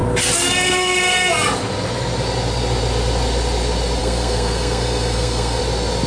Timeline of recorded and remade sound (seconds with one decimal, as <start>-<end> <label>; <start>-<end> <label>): 0.0-4.0 recorded; 4.0-5.6 remade; 5.6-6.1 recorded